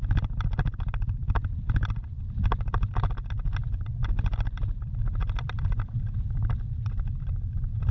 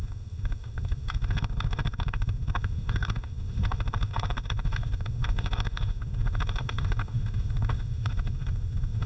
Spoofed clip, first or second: second